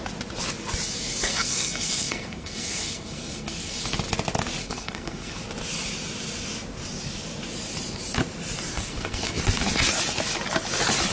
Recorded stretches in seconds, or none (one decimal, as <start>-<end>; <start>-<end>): 0.0-1.3; 3.8-4.6; 5.4-8.7; 9.4-11.1